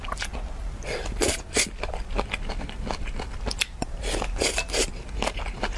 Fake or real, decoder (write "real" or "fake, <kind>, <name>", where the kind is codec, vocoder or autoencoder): real